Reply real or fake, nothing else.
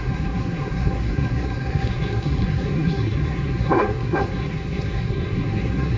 fake